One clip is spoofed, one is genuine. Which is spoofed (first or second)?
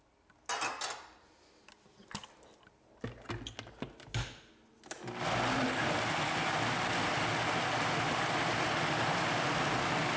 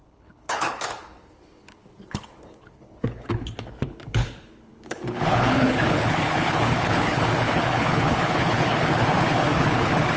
second